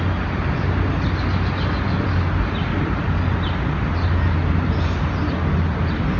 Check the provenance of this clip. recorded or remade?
recorded